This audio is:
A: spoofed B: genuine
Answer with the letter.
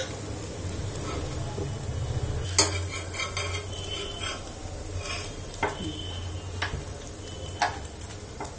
B